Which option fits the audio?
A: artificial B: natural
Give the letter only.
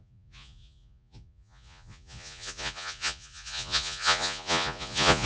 A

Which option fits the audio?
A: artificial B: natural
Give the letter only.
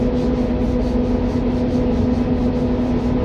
B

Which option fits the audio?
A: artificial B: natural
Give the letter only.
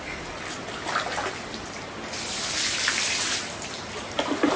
B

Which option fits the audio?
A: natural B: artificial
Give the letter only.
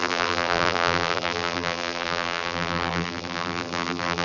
B